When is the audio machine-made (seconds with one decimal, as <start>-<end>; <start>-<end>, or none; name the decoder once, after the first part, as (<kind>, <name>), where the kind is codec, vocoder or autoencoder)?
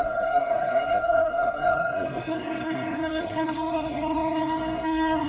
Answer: 0.0-5.3 (codec, SNAC)